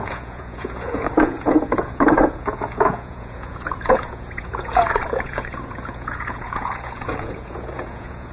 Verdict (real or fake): fake